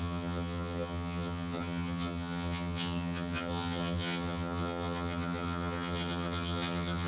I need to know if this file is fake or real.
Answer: fake